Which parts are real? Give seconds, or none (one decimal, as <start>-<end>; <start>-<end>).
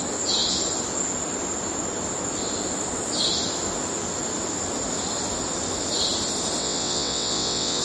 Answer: 0.0-6.6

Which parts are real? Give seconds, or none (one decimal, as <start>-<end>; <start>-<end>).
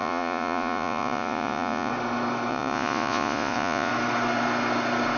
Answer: 1.9-2.5; 3.9-5.2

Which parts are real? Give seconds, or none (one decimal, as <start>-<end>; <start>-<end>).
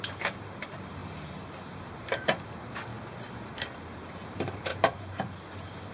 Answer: 2.9-3.6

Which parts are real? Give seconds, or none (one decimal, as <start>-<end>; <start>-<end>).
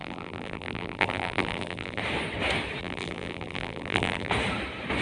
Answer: 2.0-2.8; 4.3-5.0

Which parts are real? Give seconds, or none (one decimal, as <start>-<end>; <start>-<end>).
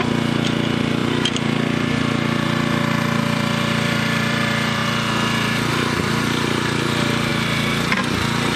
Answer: 1.0-3.2; 4.8-5.7; 7.3-8.6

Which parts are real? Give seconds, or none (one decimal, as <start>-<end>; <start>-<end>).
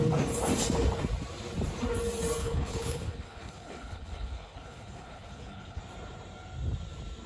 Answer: 0.0-2.4; 5.8-7.3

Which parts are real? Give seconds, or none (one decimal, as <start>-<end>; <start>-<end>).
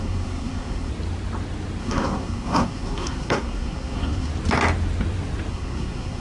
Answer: 0.9-1.8; 4.3-5.5